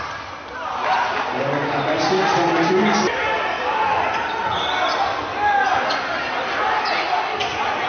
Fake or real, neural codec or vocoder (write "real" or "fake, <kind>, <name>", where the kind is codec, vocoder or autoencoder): real